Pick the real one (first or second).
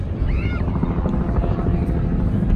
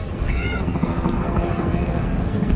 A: first